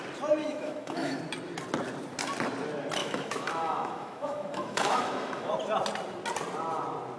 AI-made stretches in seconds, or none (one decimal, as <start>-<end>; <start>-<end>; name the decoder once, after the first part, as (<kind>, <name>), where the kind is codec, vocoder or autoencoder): 0.4-1.2 (autoencoder, DAC-VAE); 3.0-5.5